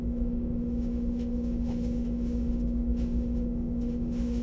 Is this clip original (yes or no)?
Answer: no